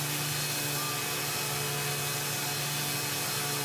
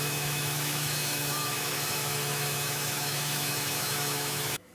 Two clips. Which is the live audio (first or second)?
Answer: first